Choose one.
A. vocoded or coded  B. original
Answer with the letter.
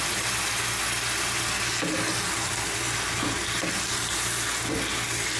B